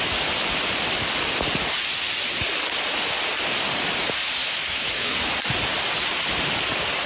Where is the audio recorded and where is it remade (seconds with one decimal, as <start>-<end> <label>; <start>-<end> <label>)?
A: 0.0-4.4 recorded; 4.4-5.3 remade; 5.3-7.1 recorded

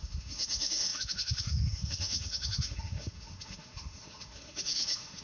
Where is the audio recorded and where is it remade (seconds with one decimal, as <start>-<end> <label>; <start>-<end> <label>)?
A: 0.0-5.2 remade